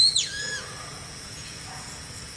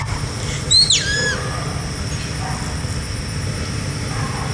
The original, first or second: second